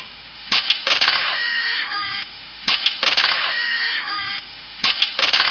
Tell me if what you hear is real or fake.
fake